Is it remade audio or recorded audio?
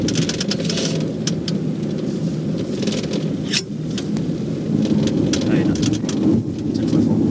recorded